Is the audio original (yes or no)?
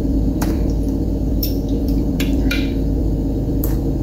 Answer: no